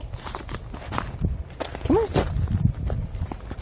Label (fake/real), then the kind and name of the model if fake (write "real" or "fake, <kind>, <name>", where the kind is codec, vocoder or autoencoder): real